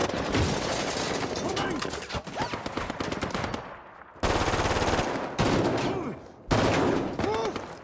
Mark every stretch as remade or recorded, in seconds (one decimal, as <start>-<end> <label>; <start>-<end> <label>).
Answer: 0.0-1.0 recorded; 1.0-4.1 remade; 4.1-6.7 recorded; 6.7-7.8 remade